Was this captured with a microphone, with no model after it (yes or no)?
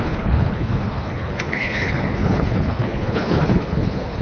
no